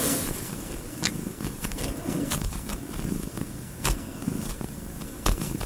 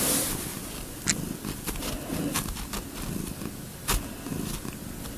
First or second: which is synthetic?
first